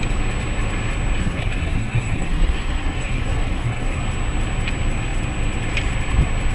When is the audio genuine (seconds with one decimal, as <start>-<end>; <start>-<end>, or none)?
0.0-1.2; 4.0-6.5